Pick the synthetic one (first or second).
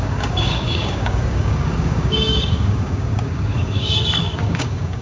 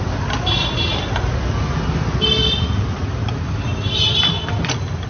first